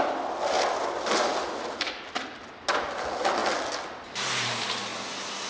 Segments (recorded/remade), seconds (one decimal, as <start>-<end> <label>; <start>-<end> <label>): 0.0-5.5 recorded